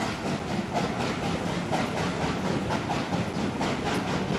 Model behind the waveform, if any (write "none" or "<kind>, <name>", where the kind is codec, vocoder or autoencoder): none